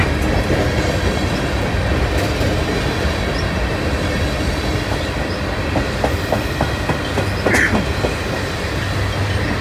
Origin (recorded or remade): recorded